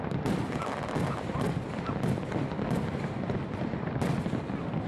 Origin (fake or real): real